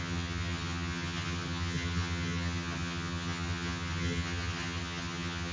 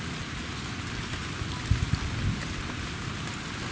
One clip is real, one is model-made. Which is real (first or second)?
second